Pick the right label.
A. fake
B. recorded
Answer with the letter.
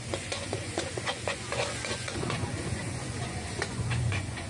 A